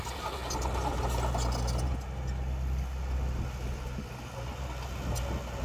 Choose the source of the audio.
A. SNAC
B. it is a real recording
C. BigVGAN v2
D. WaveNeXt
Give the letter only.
B